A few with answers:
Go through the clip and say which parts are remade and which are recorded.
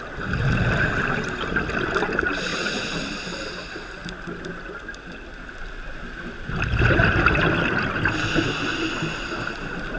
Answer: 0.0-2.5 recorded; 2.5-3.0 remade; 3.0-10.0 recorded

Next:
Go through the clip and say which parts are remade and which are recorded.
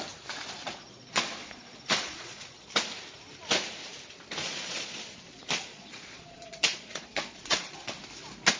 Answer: 0.0-0.6 recorded; 0.6-2.6 remade; 2.6-4.4 recorded; 4.4-5.0 remade; 5.0-5.7 recorded; 5.7-7.9 remade; 7.9-8.6 recorded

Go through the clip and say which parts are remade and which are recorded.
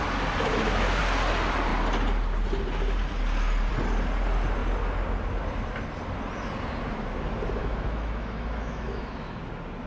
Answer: 0.0-0.5 recorded; 0.5-1.0 remade; 1.0-7.6 recorded; 7.6-9.4 remade; 9.4-9.9 recorded